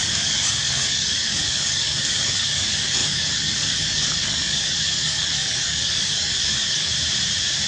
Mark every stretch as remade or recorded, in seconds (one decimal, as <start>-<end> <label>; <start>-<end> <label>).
0.0-6.9 remade; 6.9-7.7 recorded